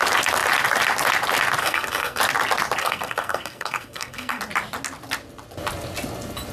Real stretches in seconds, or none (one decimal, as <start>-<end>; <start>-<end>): 0.0-1.6; 2.2-2.8; 4.4-6.5